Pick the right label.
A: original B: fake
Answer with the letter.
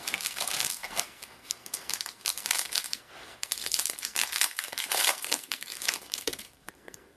B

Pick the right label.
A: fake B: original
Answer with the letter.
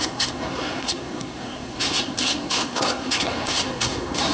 A